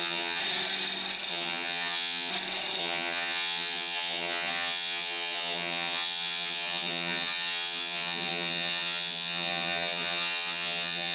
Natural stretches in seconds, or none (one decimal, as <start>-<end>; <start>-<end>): 0.4-1.3; 2.3-2.8